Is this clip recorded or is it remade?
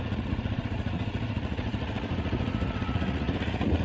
remade